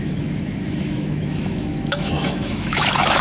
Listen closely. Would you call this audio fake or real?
fake